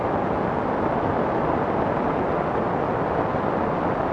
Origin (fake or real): real